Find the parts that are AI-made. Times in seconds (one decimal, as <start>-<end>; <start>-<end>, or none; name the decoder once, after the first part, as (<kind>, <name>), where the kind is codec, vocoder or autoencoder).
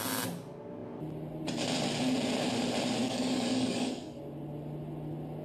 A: 3.0-4.2 (codec, DAC)